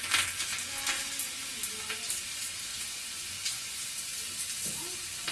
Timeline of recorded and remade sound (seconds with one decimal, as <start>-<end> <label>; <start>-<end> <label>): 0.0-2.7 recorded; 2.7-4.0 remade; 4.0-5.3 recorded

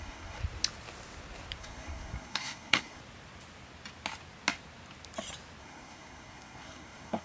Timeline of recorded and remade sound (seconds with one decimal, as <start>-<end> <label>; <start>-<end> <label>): 0.0-0.4 remade; 0.4-1.6 recorded; 1.6-3.0 remade; 3.0-5.6 recorded; 5.6-7.2 remade

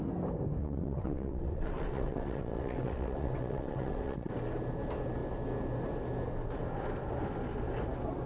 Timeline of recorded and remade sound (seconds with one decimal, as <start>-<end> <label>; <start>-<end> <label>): 0.0-0.6 recorded; 0.6-4.3 remade; 4.3-8.3 recorded

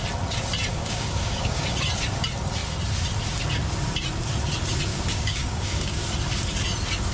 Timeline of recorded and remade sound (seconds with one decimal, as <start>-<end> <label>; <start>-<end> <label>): 0.0-0.7 recorded; 0.7-1.6 remade; 1.6-4.9 recorded; 4.9-6.0 remade; 6.0-7.1 recorded

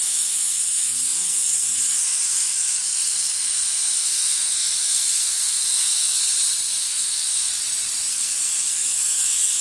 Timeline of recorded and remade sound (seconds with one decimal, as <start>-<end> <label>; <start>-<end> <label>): 0.0-6.2 remade; 6.2-6.8 recorded; 6.8-7.5 remade; 7.5-8.1 recorded; 8.1-9.6 remade

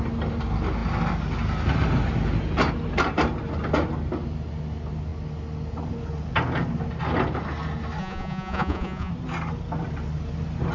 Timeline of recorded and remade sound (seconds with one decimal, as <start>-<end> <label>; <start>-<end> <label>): 0.0-8.0 recorded; 8.0-9.1 remade; 9.1-10.7 recorded